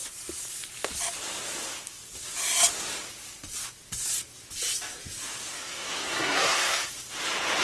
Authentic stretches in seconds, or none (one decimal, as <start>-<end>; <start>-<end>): 0.0-5.5; 6.9-7.6